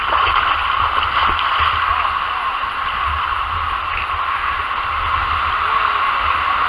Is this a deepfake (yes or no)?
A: no